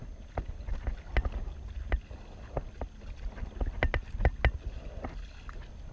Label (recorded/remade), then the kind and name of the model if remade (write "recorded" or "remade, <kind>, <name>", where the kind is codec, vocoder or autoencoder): recorded